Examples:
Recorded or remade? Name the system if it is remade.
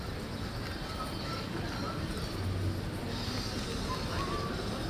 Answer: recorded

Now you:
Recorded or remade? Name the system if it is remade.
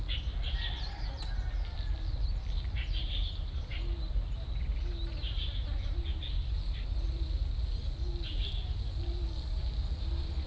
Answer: recorded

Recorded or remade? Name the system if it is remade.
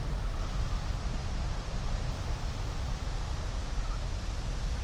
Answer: recorded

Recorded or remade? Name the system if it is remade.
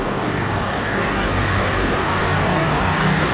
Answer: remade, codec, DAC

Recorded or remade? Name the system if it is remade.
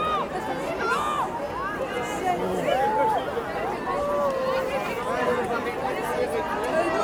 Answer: recorded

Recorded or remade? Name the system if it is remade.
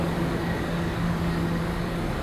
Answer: remade, codec, DAC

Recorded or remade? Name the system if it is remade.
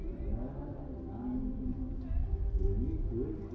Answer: recorded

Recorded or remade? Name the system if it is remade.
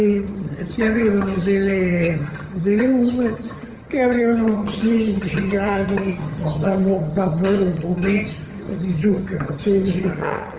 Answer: remade, vocoder, HiFi-GAN